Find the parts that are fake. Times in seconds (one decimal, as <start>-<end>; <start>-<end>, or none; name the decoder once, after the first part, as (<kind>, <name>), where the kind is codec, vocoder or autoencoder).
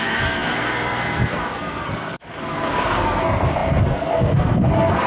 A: 0.0-5.1 (codec, SNAC)